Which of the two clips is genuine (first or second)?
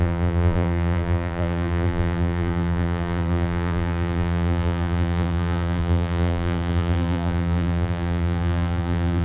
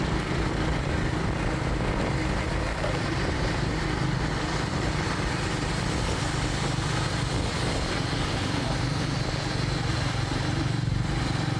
second